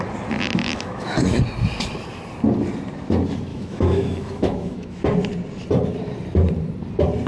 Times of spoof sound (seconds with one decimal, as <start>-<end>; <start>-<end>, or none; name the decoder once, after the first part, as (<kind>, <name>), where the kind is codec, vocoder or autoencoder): 0.6-1.4 (autoencoder, DAC-VAE); 3.5-5.0